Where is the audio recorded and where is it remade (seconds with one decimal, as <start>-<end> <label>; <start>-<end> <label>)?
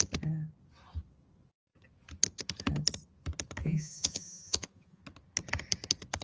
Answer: 0.0-3.6 recorded; 3.6-5.0 remade; 5.0-6.2 recorded